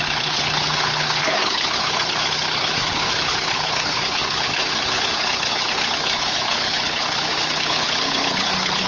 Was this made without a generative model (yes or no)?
no